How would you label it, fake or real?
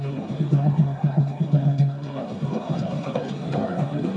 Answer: fake